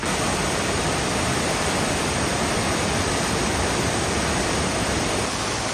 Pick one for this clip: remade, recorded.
remade